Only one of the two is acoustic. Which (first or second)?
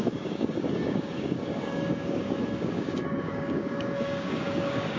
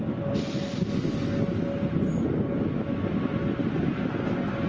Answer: second